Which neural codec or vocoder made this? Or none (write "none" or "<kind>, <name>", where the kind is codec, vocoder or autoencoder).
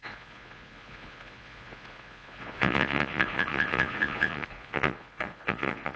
vocoder, Vocos